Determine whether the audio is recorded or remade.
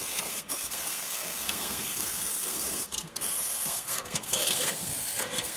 remade